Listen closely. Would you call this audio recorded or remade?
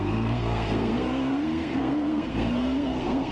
remade